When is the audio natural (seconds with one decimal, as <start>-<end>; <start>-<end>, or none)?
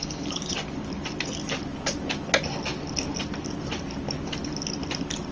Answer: 0.0-5.3